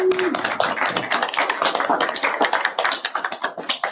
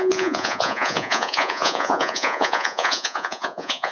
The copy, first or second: second